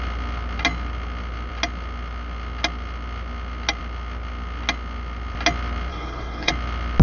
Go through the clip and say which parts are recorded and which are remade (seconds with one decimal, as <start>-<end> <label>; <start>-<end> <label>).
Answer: 0.0-5.9 recorded; 5.9-6.5 remade; 6.5-7.0 recorded